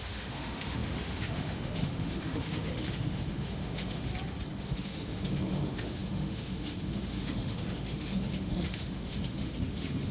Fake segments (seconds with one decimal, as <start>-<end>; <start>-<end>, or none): 0.0-4.1; 4.6-10.1